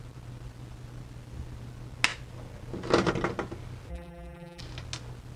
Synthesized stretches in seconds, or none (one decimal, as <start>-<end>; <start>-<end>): 3.9-4.6